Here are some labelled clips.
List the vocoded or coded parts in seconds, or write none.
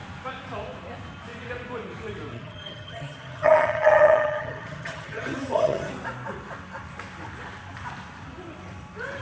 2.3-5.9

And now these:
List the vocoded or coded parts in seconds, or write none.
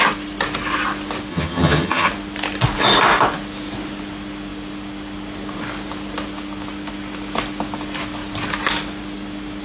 1.3-2.1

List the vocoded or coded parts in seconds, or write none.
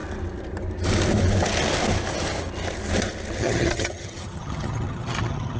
3.4-5.6